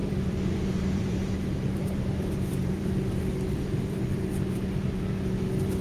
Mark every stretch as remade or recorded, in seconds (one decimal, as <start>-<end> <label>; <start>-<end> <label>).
0.0-3.5 remade; 3.5-5.8 recorded